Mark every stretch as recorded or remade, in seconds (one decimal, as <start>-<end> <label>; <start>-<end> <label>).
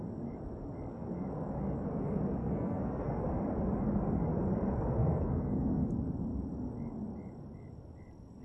0.0-2.4 recorded; 2.4-3.2 remade; 3.2-5.0 recorded; 5.0-5.9 remade; 5.9-8.4 recorded